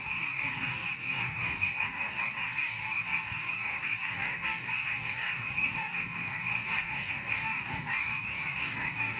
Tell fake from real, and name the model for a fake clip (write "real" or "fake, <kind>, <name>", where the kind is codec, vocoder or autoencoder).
fake, codec, DAC